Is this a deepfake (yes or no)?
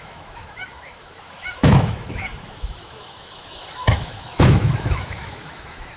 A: yes